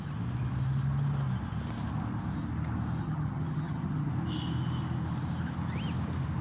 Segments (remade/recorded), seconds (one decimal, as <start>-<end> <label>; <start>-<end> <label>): 0.0-3.0 recorded; 3.0-4.1 remade; 4.1-6.4 recorded